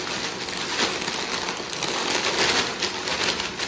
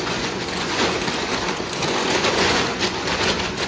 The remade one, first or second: second